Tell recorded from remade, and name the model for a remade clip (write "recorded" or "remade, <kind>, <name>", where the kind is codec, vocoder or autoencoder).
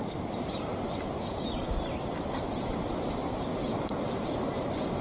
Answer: remade, vocoder, BigVGAN v2